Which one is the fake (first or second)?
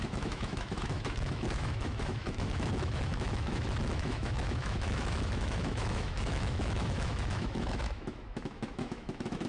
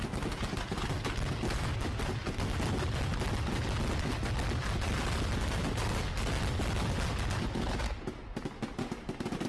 first